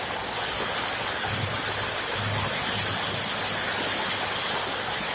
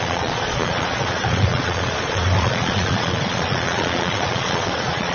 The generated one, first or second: second